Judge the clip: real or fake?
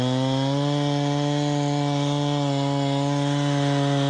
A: real